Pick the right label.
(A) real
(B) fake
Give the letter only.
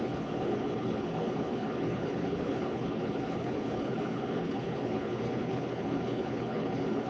B